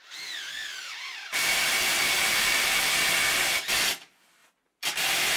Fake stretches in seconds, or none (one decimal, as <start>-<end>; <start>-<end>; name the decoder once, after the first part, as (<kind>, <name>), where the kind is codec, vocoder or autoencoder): 0.6-2.9 (vocoder, BigVGAN v2)